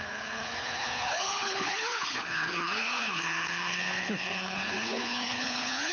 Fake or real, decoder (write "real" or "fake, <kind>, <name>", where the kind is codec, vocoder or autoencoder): fake, codec, HILCodec